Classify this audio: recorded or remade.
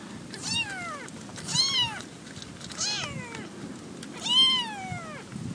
recorded